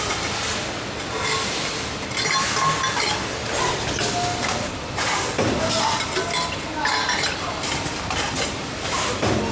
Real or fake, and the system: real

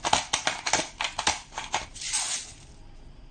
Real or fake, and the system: real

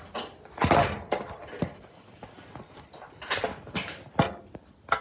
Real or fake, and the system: real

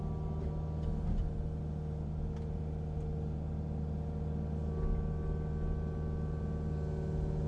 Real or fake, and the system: real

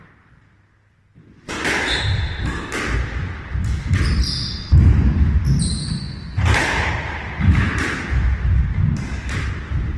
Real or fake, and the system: real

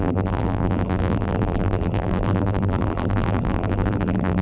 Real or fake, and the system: fake, vocoder, BigVGAN v2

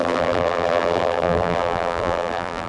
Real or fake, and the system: fake, vocoder, BigVGAN v2